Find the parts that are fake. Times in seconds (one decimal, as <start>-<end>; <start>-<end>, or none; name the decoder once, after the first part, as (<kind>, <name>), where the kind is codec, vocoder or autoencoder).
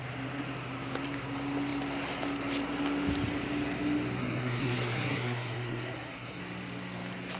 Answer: 4.2-6.4 (codec, SNAC)